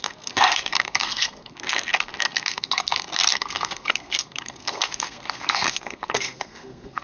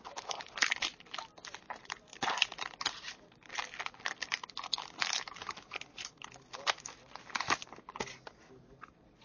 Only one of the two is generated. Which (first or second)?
first